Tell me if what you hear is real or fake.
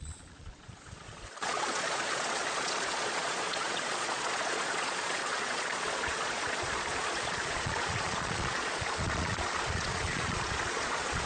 fake